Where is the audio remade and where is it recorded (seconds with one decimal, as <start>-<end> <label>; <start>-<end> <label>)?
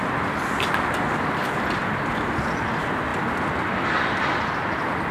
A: 0.0-5.1 recorded